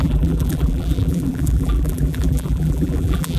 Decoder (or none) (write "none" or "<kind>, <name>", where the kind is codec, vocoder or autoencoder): vocoder, BigVGAN v2